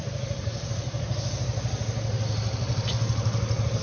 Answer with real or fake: real